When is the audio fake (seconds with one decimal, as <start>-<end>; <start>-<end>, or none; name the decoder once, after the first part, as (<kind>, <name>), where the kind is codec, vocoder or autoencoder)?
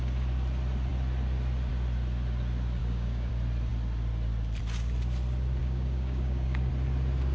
2.8-3.3 (codec, DAC); 5.6-6.7